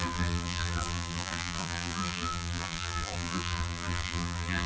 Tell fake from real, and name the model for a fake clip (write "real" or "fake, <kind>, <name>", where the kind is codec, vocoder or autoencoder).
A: fake, vocoder, BigVGAN v2